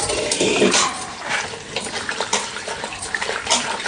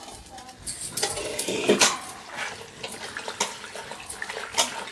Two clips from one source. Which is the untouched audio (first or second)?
second